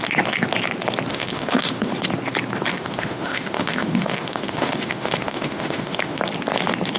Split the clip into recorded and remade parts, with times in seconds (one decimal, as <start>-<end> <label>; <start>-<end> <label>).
0.0-1.1 recorded; 1.1-1.9 remade; 1.9-2.7 recorded; 2.7-6.2 remade; 6.2-7.0 recorded